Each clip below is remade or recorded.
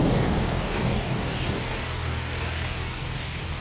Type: remade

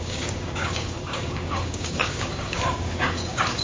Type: remade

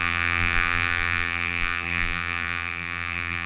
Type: remade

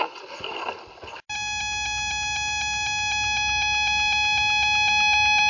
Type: recorded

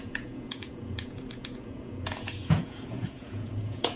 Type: remade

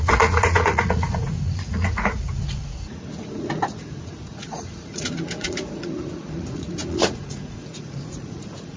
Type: remade